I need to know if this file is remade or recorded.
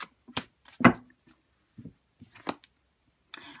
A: recorded